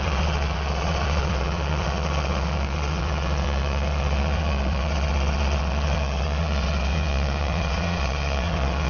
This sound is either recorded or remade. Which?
remade